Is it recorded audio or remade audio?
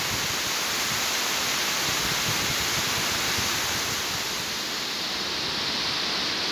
recorded